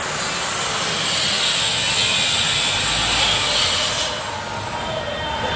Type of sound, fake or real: real